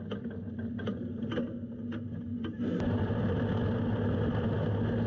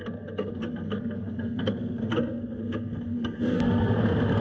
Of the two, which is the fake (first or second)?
second